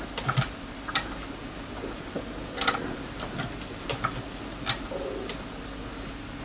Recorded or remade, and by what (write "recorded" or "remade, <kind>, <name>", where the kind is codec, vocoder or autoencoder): recorded